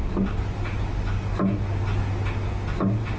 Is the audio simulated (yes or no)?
no